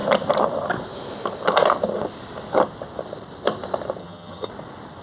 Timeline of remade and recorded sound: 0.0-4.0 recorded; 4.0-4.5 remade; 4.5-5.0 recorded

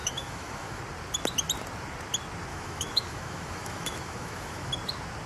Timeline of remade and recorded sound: 0.0-0.8 remade; 0.8-2.5 recorded; 2.5-4.7 remade; 4.7-5.3 recorded

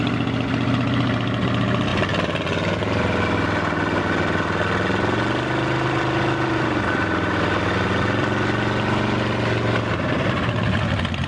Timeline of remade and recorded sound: 0.0-11.3 recorded

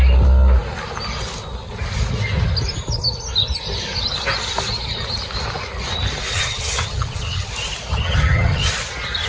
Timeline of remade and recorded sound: 0.0-6.3 recorded; 6.3-7.5 remade; 7.5-7.9 recorded; 7.9-8.7 remade; 8.7-9.3 recorded

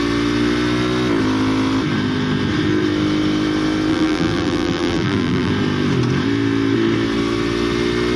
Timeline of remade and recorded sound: 0.0-3.9 recorded; 3.9-5.5 remade; 5.5-8.2 recorded

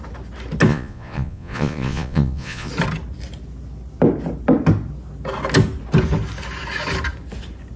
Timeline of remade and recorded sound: 0.0-0.7 recorded; 0.7-2.7 remade; 2.7-7.8 recorded

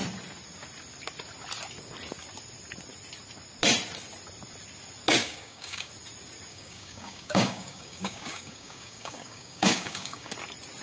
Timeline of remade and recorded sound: 0.0-5.2 recorded; 5.2-5.9 remade; 5.9-6.5 recorded; 6.5-10.3 remade; 10.3-10.8 recorded